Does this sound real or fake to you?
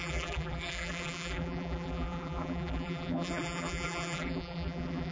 fake